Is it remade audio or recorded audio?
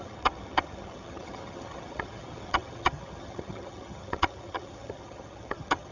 remade